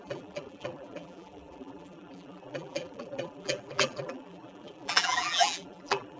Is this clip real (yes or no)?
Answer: no